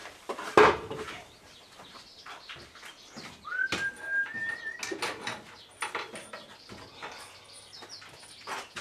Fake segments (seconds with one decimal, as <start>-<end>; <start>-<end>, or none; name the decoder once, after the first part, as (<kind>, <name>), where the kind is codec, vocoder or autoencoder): 0.0-2.2 (vocoder, BigVGAN v2)